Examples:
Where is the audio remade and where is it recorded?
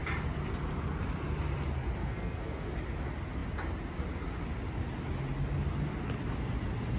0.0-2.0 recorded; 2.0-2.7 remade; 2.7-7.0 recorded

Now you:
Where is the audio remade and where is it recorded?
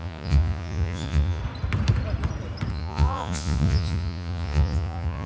0.0-1.4 remade; 1.4-2.7 recorded; 2.7-5.3 remade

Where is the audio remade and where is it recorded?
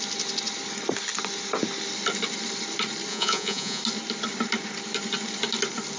0.0-3.1 recorded; 3.1-3.8 remade; 3.8-6.0 recorded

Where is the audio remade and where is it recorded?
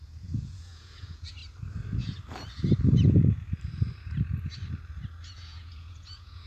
0.0-1.4 remade; 1.4-5.3 recorded; 5.3-6.5 remade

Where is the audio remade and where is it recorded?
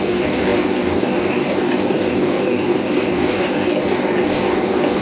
0.0-5.0 remade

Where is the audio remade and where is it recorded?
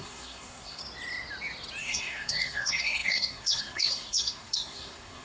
0.0-0.8 remade; 0.8-1.8 recorded; 1.8-5.2 remade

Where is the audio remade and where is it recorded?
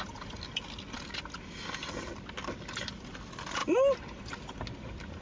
0.0-5.2 recorded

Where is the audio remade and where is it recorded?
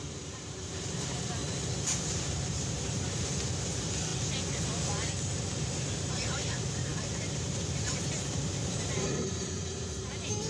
0.0-1.4 remade; 1.4-2.0 recorded; 2.0-4.1 remade; 4.1-5.6 recorded; 5.6-10.5 remade